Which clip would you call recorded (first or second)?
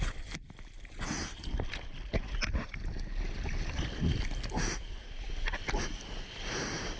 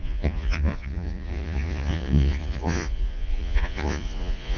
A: first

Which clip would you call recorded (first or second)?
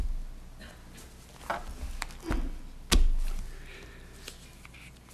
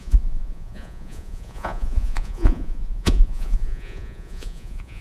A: first